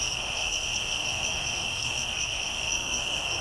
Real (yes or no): no